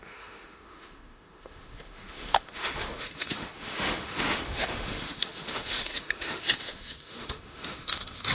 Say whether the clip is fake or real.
fake